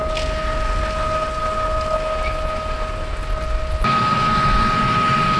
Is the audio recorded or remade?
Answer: recorded